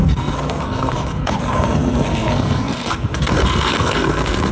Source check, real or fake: fake